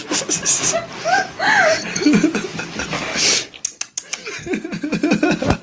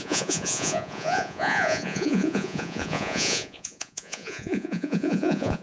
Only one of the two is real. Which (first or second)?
first